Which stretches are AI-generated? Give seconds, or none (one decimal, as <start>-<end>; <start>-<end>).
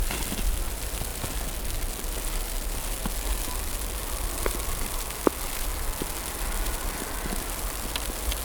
none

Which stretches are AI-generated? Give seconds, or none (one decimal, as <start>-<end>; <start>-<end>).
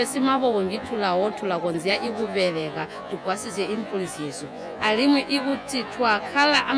0.0-1.3; 1.9-6.8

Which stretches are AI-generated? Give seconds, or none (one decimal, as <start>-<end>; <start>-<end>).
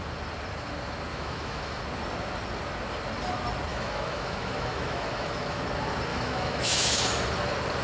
1.1-1.8; 3.7-5.6; 6.1-7.0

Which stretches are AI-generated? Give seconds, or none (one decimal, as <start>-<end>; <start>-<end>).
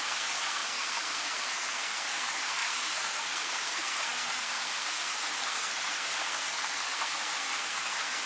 0.0-8.3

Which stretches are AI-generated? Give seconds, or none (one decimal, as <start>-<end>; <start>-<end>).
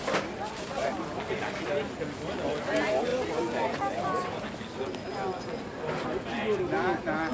none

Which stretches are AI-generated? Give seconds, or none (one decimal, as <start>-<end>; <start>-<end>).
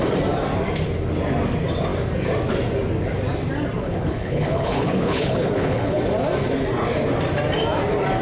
3.8-6.0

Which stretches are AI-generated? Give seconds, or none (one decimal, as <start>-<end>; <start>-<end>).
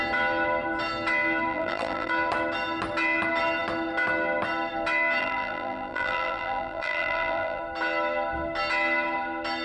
1.5-2.1; 5.2-7.6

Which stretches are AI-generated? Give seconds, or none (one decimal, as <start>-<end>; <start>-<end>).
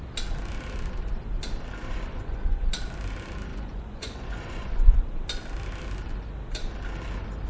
1.8-2.6; 3.5-5.0